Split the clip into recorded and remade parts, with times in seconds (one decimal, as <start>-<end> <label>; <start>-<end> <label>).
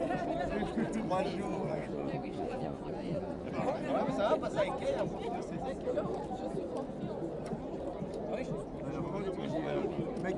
0.0-1.5 recorded; 1.5-3.5 remade; 3.5-9.4 recorded; 9.4-10.0 remade; 10.0-10.4 recorded